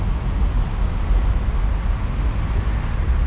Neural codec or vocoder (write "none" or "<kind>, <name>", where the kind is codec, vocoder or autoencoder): none